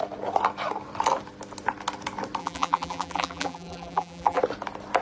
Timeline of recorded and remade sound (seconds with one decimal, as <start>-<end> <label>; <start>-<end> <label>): 0.0-2.4 recorded; 2.4-4.4 remade; 4.4-5.0 recorded

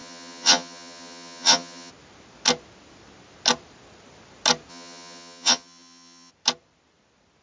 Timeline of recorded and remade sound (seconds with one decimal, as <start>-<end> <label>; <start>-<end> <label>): 0.0-1.9 remade; 1.9-4.7 recorded; 4.7-6.3 remade; 6.3-7.4 recorded

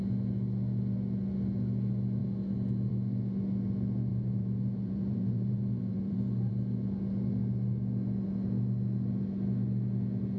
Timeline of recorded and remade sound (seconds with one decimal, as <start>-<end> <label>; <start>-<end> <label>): 0.0-4.1 recorded; 4.1-6.5 remade; 6.5-10.4 recorded

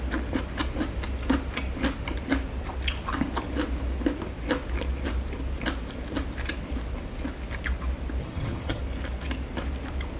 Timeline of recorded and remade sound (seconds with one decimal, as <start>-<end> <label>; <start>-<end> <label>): 0.0-8.2 recorded; 8.2-8.8 remade; 8.8-10.2 recorded